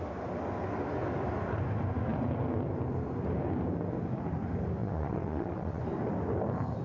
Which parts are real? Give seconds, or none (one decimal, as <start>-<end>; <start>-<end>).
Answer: 0.0-4.8; 5.8-6.8